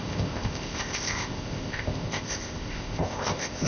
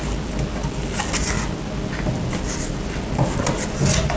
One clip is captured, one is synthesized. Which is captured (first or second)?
second